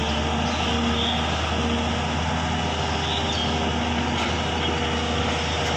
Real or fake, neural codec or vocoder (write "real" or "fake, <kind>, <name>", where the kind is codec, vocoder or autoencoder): real